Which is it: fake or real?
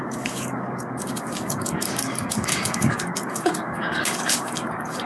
fake